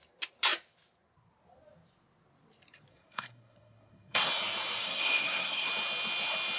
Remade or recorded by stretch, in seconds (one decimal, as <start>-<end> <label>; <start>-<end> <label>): 0.0-2.9 recorded; 2.9-4.3 remade; 4.3-4.8 recorded; 4.8-5.7 remade; 5.7-6.6 recorded